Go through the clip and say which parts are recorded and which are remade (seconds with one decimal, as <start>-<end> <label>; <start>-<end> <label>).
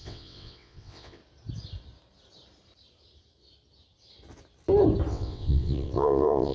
0.0-1.2 remade; 1.2-5.1 recorded; 5.1-6.5 remade